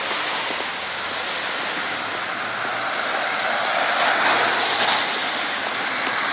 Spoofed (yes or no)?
no